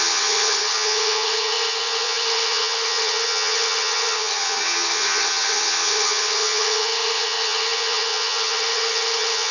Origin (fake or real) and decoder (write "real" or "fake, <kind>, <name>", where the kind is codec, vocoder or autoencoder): fake, vocoder, HiFi-GAN